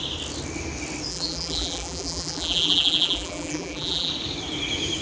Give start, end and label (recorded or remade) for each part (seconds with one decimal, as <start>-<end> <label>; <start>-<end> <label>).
0.0-1.1 recorded; 1.1-4.1 remade; 4.1-5.0 recorded